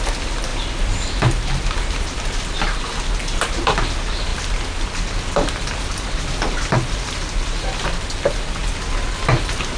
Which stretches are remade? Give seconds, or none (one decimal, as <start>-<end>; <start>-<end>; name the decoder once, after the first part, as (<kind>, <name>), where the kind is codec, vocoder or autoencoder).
none

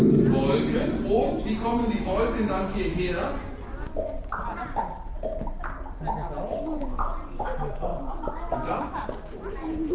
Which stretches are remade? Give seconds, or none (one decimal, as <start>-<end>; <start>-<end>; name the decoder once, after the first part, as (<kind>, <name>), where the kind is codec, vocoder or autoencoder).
1.8-3.3 (autoencoder, DAC-VAE)

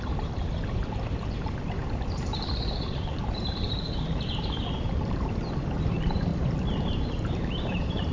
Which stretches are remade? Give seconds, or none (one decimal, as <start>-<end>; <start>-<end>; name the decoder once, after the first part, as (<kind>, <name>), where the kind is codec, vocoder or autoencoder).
0.0-6.3 (vocoder, BigVGAN v2); 7.1-8.1

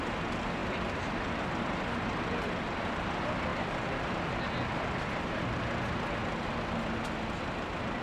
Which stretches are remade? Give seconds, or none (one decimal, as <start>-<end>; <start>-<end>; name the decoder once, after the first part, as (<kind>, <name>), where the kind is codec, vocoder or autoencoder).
0.6-1.4 (vocoder, BigVGAN v2); 3.5-4.8

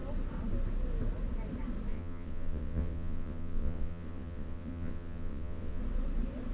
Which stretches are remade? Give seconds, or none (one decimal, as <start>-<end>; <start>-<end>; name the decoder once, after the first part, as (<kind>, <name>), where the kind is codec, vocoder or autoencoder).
1.9-5.8 (vocoder, WaveNeXt)

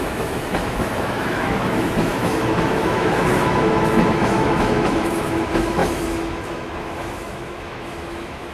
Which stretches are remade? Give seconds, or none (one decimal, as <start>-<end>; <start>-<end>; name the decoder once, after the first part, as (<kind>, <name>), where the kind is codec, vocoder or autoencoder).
0.0-8.5 (autoencoder, DAC-VAE)

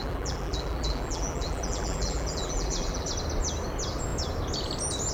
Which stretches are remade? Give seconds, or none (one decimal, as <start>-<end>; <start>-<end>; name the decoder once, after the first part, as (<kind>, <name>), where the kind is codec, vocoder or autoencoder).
0.0-3.1 (vocoder, BigVGAN v2)

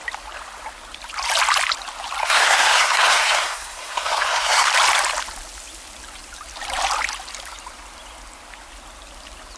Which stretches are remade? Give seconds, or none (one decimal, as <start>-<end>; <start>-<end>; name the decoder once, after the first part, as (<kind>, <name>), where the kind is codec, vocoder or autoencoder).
2.2-4.7 (codec, SNAC)